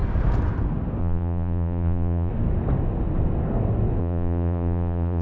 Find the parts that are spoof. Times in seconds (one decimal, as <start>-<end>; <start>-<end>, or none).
1.0-2.3; 4.0-5.2